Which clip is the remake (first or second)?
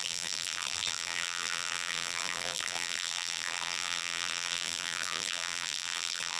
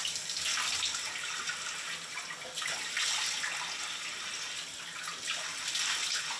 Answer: first